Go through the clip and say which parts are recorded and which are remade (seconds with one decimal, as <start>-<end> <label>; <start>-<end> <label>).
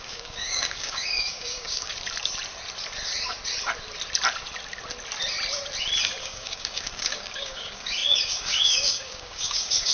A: 0.0-1.9 remade; 1.9-6.2 recorded; 6.2-9.9 remade